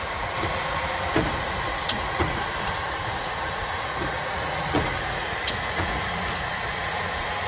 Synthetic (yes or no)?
yes